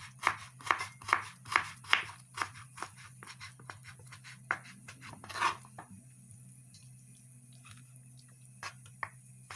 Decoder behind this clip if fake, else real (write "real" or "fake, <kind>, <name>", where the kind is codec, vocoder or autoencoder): real